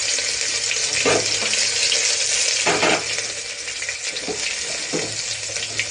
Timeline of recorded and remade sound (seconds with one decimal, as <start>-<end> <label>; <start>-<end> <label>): 0.0-5.9 recorded